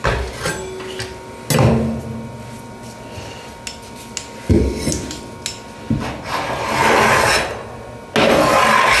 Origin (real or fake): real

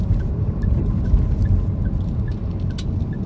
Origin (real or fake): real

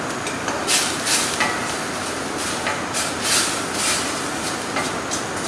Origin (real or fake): real